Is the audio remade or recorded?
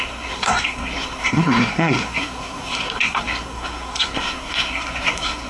remade